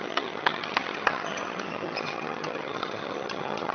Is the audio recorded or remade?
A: remade